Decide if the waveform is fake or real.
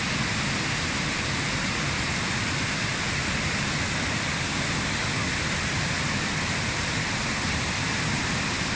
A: real